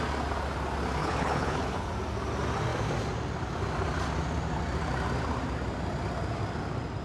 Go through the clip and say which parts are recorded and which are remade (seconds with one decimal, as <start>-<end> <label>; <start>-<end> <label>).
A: 0.0-1.0 recorded; 1.0-1.9 remade; 1.9-7.0 recorded